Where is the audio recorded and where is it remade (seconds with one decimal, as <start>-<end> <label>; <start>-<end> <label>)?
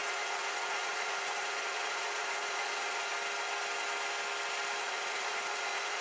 0.0-3.1 remade; 3.1-4.8 recorded; 4.8-6.0 remade